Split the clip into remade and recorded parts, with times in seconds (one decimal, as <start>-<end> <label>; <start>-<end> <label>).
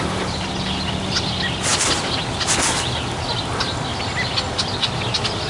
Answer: 0.0-5.5 recorded